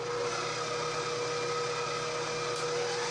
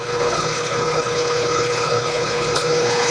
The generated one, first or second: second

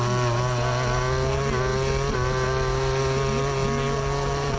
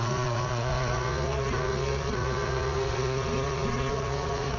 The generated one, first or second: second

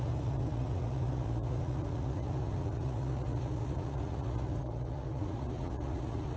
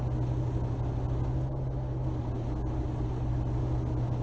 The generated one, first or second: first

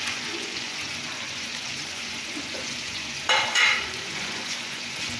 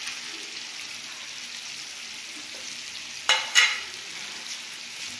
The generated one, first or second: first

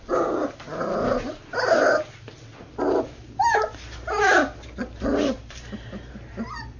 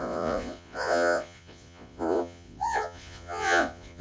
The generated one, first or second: second